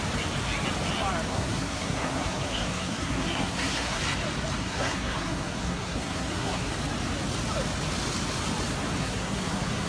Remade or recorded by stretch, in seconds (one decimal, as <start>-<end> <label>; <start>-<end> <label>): 0.0-1.3 recorded; 1.3-4.0 remade; 4.0-4.6 recorded; 4.6-6.7 remade; 6.7-9.0 recorded; 9.0-9.9 remade